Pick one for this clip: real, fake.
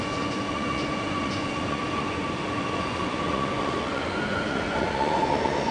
fake